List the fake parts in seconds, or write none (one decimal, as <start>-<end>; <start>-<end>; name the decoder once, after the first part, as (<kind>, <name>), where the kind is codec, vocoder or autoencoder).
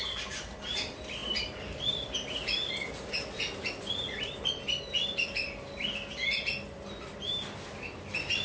0.0-8.4 (vocoder, BigVGAN v2)